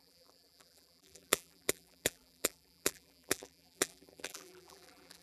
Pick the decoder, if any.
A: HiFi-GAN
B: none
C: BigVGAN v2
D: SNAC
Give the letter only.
C